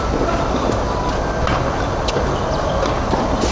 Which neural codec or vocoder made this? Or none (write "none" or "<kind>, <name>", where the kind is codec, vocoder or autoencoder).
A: none